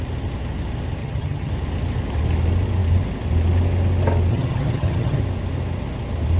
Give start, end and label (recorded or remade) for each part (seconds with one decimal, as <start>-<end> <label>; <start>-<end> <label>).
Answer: 0.0-1.0 recorded; 1.0-1.5 remade; 1.5-4.3 recorded; 4.3-5.2 remade; 5.2-6.4 recorded